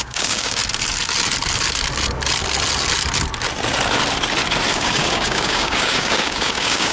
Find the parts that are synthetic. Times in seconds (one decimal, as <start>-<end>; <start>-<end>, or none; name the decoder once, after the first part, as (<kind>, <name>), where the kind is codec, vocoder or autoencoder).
0.0-0.6 (codec, DAC); 4.7-6.9